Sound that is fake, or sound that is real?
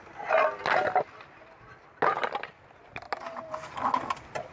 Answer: real